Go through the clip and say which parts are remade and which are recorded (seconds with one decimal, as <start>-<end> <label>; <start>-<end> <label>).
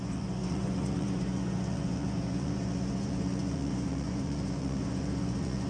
0.0-5.7 remade